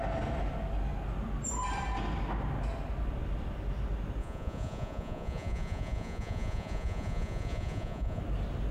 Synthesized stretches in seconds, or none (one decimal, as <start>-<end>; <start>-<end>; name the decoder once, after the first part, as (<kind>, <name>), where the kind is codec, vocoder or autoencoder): 4.2-8.2 (vocoder, Vocos)